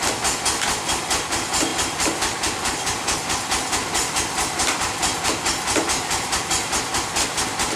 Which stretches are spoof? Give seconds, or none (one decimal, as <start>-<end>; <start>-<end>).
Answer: none